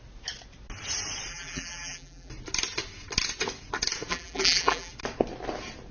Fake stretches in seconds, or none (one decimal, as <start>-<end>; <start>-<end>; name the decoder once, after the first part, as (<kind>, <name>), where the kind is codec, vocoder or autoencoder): 1.3-2.3 (vocoder, BigVGAN v2); 4.1-4.9